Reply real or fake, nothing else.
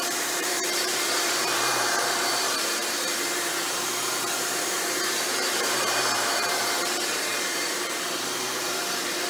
fake